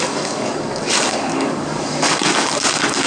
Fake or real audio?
fake